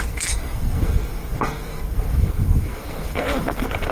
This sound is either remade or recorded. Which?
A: remade